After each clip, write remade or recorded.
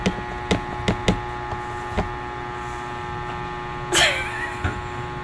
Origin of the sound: recorded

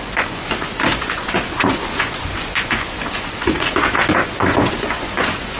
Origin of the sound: remade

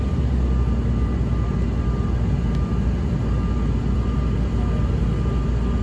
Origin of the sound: recorded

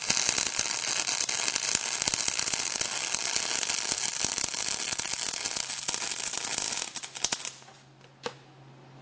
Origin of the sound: recorded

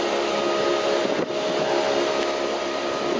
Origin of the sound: recorded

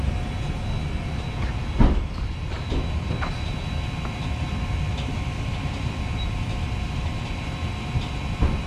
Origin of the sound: recorded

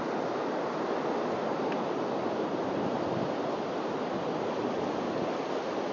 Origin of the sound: recorded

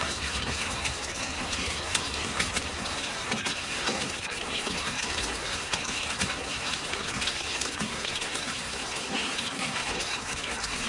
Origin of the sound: remade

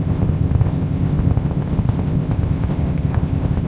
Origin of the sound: remade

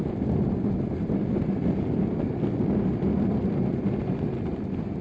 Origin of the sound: recorded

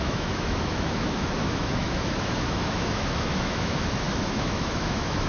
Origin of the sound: remade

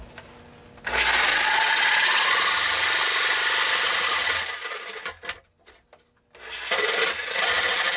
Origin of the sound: recorded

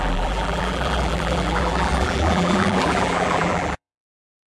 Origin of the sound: remade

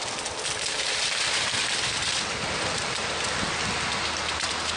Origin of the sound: remade